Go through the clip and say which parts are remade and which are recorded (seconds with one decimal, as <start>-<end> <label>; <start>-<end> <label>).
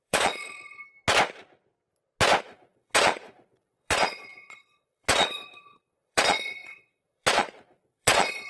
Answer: 0.0-0.4 remade; 0.4-2.4 recorded; 2.4-8.5 remade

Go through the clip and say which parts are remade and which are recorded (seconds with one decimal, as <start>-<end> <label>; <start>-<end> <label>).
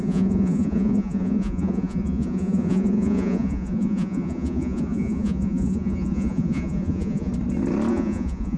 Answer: 0.0-7.3 remade; 7.3-7.9 recorded; 7.9-8.6 remade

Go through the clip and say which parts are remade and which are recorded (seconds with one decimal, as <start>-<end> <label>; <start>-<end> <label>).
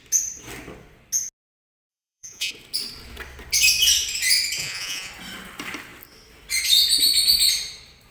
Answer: 0.0-1.9 recorded; 1.9-2.5 remade; 2.5-4.6 recorded; 4.6-5.1 remade; 5.1-8.1 recorded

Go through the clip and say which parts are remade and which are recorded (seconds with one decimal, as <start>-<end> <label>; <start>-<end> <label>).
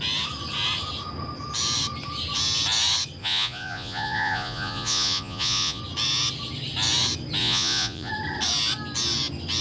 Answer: 0.0-3.2 recorded; 3.2-5.8 remade; 5.8-7.4 recorded; 7.4-8.1 remade; 8.1-9.6 recorded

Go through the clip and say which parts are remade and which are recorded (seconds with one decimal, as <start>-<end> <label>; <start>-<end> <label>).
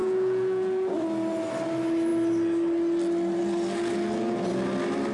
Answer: 0.0-0.9 remade; 0.9-5.1 recorded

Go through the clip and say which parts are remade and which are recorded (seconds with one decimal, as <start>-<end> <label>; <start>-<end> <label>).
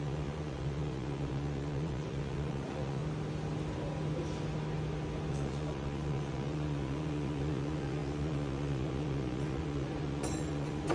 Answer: 0.0-3.0 remade; 3.0-5.3 recorded; 5.3-10.9 remade